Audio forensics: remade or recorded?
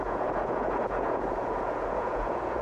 remade